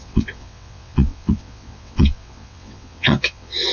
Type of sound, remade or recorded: remade